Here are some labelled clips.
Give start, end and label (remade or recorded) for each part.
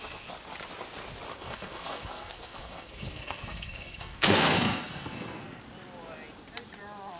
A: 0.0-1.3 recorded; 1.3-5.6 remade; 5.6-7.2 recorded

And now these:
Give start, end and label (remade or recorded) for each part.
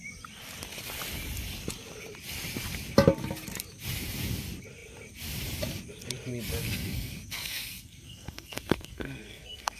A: 0.0-6.6 recorded; 6.6-9.8 remade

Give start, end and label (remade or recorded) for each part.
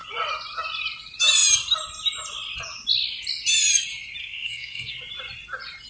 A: 0.0-4.2 recorded; 4.2-4.9 remade; 4.9-5.9 recorded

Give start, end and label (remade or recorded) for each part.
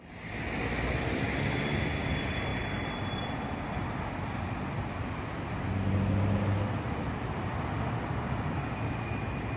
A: 0.0-9.6 recorded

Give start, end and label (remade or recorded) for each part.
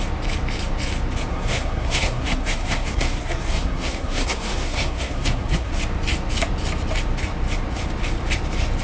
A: 0.0-1.3 recorded; 1.3-5.8 remade; 5.8-8.8 recorded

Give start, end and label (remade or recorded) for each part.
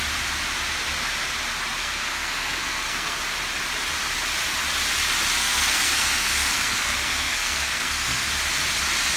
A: 0.0-1.8 recorded; 1.8-3.2 remade; 3.2-5.4 recorded; 5.4-8.3 remade; 8.3-9.2 recorded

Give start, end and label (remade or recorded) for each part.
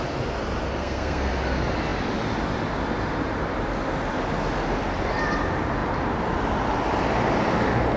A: 0.0-0.8 recorded; 0.8-1.3 remade; 1.3-8.0 recorded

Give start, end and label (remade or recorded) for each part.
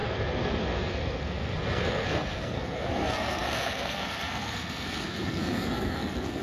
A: 0.0-6.4 remade